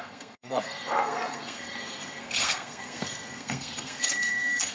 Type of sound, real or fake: fake